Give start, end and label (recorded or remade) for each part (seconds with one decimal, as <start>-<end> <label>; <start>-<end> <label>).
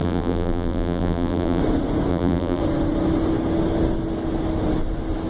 0.0-1.6 remade; 1.6-2.1 recorded; 2.1-2.6 remade; 2.6-5.3 recorded